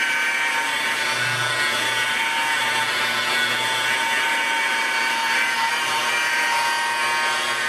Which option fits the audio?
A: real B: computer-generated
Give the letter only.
A